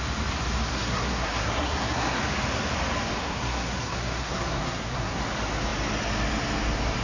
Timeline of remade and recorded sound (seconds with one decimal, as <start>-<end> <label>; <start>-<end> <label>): 0.0-0.7 recorded; 0.7-2.2 remade; 2.2-3.2 recorded; 3.2-5.2 remade; 5.2-7.0 recorded